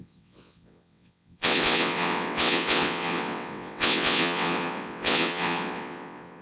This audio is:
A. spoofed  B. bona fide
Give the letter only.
A